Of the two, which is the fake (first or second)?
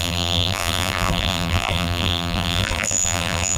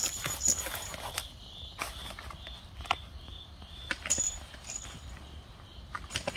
first